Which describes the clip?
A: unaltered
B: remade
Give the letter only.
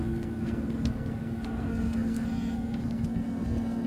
B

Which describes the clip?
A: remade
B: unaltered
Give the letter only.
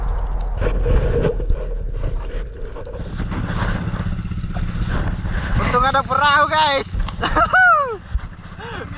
B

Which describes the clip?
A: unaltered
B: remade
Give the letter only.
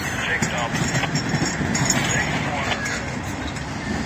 A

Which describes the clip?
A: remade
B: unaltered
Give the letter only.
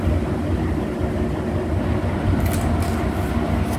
B